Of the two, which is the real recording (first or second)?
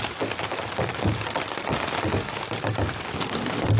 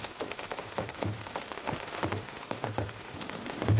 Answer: first